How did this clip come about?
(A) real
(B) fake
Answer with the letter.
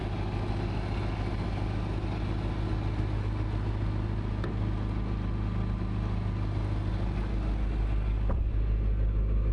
A